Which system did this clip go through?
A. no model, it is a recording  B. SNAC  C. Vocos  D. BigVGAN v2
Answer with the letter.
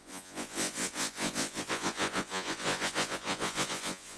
C